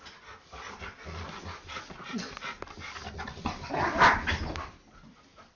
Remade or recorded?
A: recorded